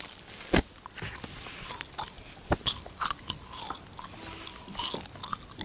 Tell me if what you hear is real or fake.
real